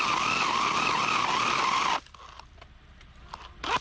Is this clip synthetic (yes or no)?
no